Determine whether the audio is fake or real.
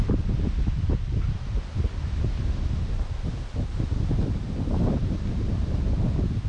real